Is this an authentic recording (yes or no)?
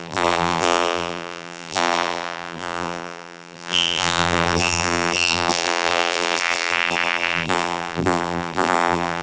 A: no